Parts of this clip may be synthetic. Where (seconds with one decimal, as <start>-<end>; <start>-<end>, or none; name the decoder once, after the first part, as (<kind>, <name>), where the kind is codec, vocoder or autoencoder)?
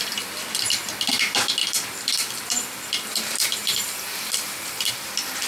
1.6-4.9 (vocoder, BigVGAN v2)